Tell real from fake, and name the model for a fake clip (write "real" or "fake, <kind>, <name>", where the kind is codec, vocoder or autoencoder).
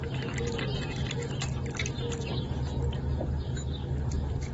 real